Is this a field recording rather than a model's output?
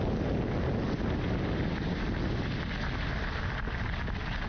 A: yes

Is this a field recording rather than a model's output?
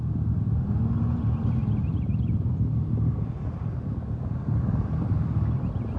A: yes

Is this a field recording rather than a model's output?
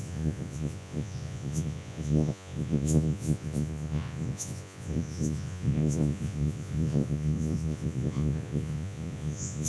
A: no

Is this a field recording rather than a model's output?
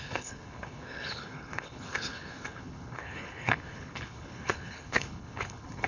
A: no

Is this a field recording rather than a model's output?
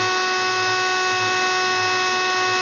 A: yes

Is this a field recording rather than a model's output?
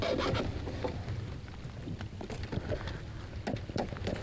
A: yes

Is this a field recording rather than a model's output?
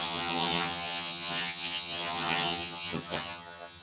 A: no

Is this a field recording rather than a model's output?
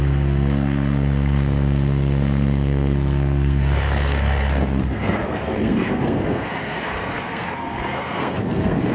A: no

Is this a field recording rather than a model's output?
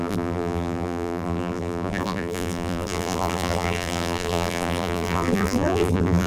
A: no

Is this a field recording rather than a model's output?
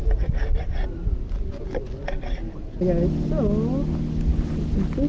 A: yes